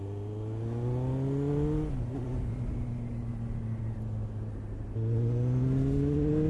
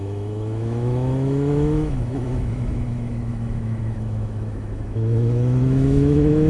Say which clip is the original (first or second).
first